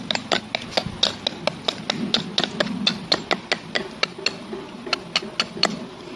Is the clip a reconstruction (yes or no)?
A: no